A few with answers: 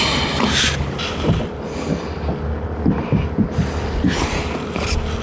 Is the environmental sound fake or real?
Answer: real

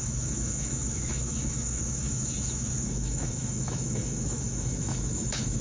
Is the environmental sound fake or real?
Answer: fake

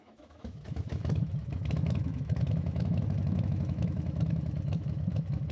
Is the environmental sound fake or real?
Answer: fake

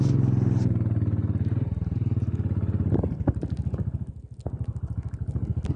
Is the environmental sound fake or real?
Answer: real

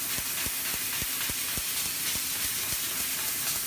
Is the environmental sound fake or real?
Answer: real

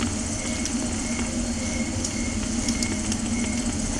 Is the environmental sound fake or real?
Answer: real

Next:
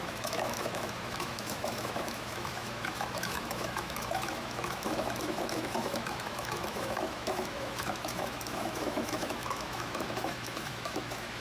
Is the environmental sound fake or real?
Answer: fake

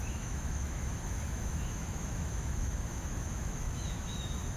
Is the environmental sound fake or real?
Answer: fake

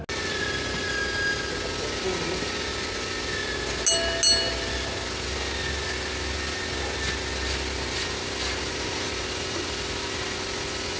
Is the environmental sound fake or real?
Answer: real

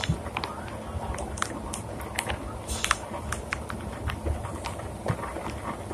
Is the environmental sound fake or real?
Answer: real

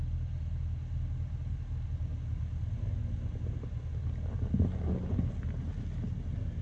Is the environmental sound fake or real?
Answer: real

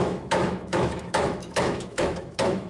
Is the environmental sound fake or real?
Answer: fake